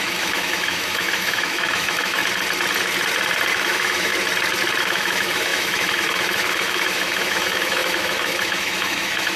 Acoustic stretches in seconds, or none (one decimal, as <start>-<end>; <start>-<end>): 2.2-3.5; 4.1-4.8